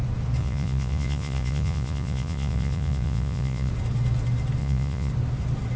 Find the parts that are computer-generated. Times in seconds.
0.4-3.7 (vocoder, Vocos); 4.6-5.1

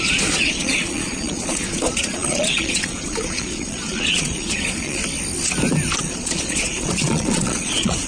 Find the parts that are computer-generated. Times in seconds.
0.0-5.0 (vocoder, Vocos); 6.0-8.1

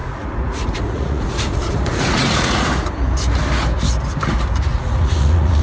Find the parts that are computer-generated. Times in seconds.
0.0-2.7 (vocoder, Vocos); 4.7-5.6

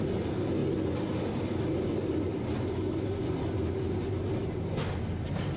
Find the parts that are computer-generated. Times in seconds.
none

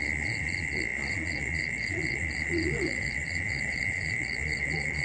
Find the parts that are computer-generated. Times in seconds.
0.0-5.0 (vocoder, Vocos)